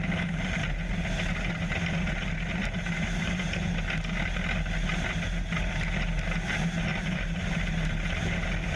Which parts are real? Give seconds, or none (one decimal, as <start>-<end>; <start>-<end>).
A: 0.0-8.8